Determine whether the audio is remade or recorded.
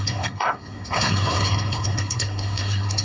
remade